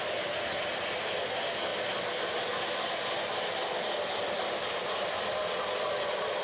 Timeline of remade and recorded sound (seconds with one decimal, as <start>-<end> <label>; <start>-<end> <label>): 0.0-6.4 recorded